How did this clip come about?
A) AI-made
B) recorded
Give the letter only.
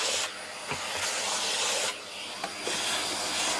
B